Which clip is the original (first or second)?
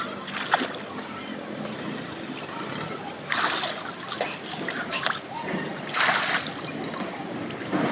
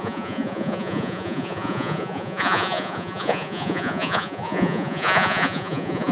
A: first